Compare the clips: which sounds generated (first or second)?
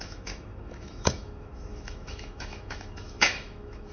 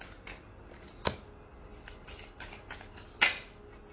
first